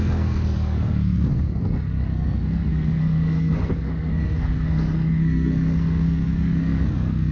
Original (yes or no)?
no